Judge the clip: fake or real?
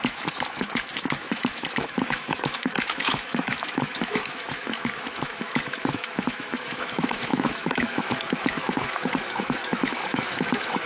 fake